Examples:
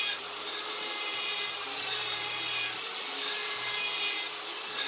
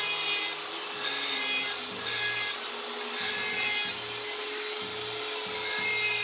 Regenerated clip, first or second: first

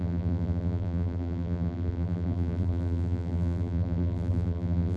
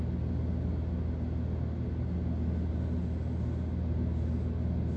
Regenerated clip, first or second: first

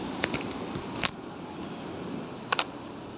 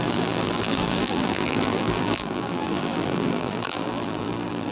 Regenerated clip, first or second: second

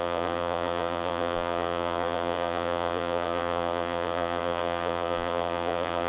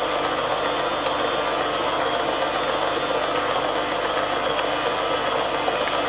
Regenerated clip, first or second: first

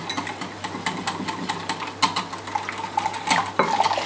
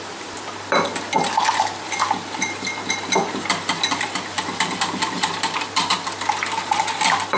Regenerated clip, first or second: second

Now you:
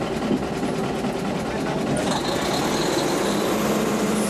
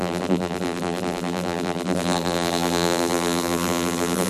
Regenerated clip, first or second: second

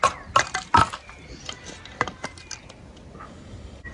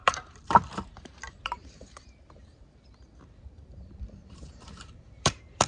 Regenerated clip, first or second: second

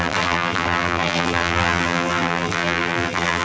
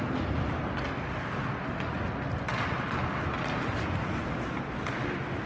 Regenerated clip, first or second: first